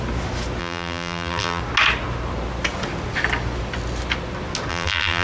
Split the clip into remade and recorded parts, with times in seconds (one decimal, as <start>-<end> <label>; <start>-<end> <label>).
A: 0.0-0.6 recorded; 0.6-1.6 remade; 1.6-4.7 recorded; 4.7-5.2 remade